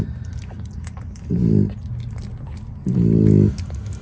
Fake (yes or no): no